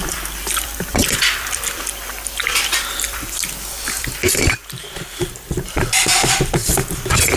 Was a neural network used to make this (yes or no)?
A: no